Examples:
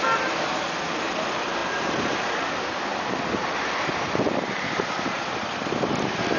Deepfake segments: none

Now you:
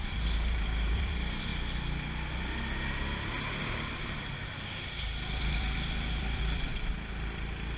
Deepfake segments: 0.0-1.5; 4.7-6.7

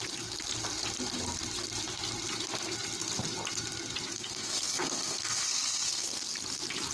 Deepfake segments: 4.1-6.2